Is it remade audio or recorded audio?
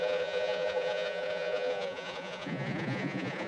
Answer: remade